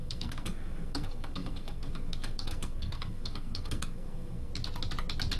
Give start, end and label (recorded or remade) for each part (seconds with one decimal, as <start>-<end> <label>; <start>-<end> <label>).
0.0-4.5 remade; 4.5-5.4 recorded